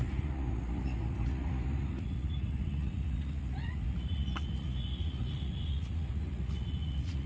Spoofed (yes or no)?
yes